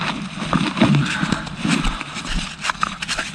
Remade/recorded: recorded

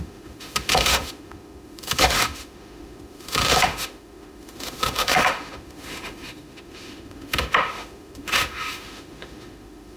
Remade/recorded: remade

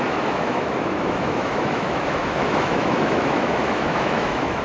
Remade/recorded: remade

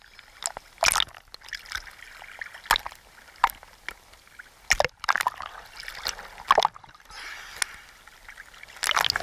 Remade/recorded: recorded